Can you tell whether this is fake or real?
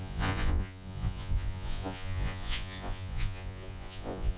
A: fake